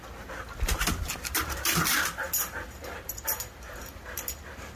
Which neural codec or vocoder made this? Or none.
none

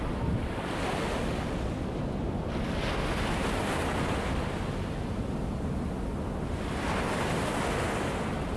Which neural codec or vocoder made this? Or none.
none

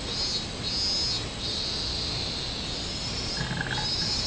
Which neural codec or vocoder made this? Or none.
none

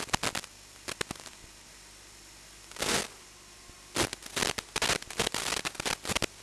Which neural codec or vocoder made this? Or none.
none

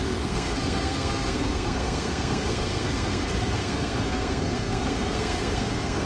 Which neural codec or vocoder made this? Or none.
codec, SNAC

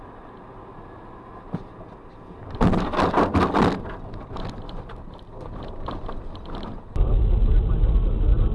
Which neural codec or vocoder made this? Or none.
none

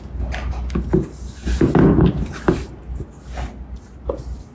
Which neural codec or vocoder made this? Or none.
none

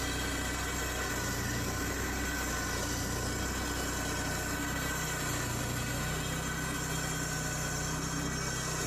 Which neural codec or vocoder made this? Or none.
none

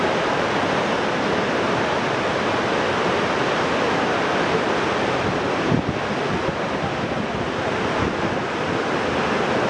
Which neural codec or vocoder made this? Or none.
none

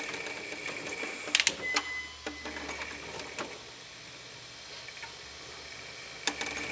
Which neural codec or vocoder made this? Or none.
none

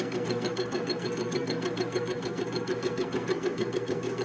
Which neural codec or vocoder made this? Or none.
codec, SNAC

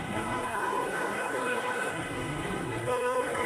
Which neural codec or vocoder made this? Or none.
codec, SNAC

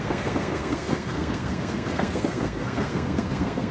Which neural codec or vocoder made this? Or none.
codec, SNAC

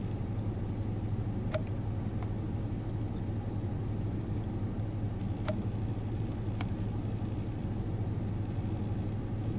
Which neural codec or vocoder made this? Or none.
none